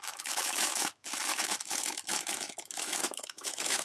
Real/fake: fake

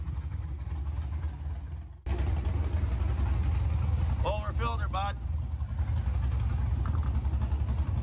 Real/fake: real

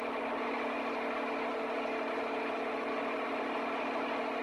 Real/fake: real